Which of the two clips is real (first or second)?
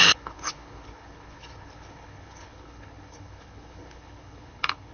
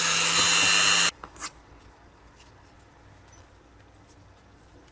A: second